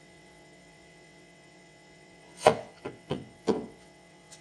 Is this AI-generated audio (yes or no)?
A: yes